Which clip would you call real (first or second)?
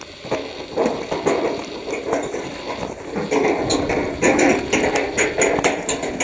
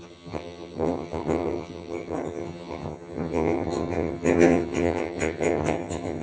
first